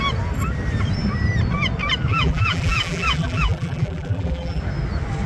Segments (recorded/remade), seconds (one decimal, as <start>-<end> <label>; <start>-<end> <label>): 0.0-2.1 recorded; 2.1-4.6 remade; 4.6-5.3 recorded